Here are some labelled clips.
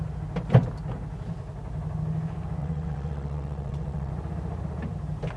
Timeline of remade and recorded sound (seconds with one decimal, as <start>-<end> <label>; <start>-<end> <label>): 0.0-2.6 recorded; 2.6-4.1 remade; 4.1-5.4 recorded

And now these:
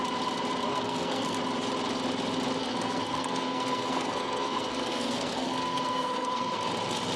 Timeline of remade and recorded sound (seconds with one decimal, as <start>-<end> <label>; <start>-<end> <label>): 0.0-0.7 recorded; 0.7-1.4 remade; 1.4-2.6 recorded; 2.6-6.7 remade; 6.7-7.2 recorded

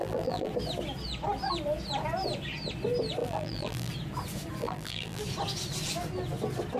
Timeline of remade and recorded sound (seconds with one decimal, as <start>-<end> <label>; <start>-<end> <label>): 0.0-0.5 remade; 0.5-3.2 recorded; 3.2-3.9 remade; 3.9-4.6 recorded; 4.6-5.2 remade; 5.2-6.8 recorded

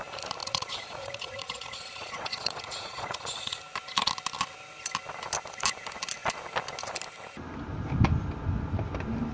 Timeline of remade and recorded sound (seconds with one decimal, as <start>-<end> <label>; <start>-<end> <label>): 0.0-0.4 recorded; 0.4-3.6 remade; 3.6-9.3 recorded

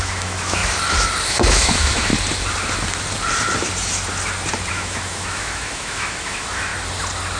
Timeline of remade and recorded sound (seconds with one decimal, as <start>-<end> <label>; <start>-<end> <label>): 0.0-0.6 remade; 0.6-1.3 recorded; 1.3-2.1 remade; 2.1-4.7 recorded; 4.7-6.7 remade; 6.7-7.4 recorded